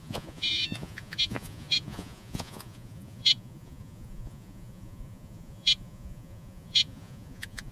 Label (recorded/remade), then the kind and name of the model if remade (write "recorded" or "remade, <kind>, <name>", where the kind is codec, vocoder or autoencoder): remade, vocoder, Vocos